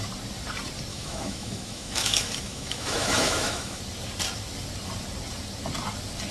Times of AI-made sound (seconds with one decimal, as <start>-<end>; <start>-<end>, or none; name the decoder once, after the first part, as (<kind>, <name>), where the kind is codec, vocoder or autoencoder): 0.9-3.8 (autoencoder, DAC-VAE)